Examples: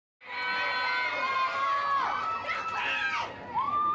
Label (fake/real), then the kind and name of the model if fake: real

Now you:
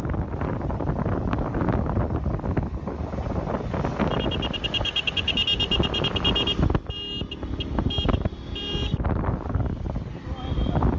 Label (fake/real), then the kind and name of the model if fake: real